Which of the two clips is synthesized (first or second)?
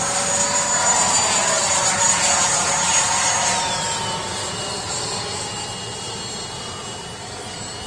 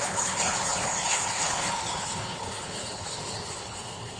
second